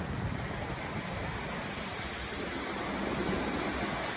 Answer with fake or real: real